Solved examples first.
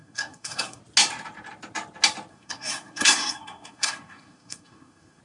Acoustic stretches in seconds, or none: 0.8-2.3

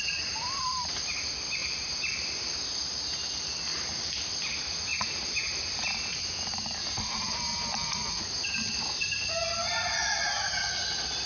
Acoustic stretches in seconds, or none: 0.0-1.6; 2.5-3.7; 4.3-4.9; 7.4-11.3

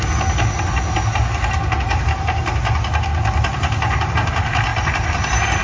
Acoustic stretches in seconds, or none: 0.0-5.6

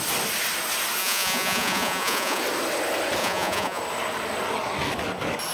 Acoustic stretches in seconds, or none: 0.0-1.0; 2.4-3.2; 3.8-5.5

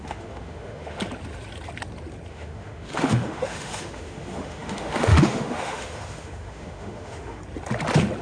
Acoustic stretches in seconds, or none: 1.0-2.3; 7.4-8.2

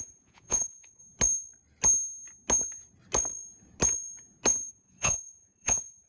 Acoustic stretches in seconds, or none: 1.0-4.7